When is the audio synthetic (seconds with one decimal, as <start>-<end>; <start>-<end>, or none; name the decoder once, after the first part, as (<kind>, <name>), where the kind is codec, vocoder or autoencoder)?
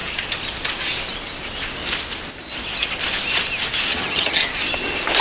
3.9-4.4 (vocoder, HiFi-GAN)